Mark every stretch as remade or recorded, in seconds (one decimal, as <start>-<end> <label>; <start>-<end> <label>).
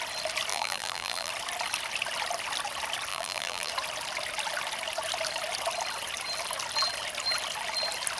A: 0.0-0.5 recorded; 0.5-1.3 remade; 1.3-3.1 recorded; 3.1-3.7 remade; 3.7-8.2 recorded